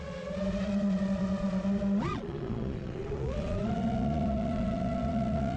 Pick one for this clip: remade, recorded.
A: remade